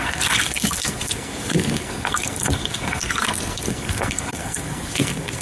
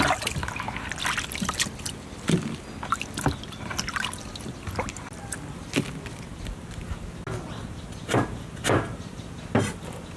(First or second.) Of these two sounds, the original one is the second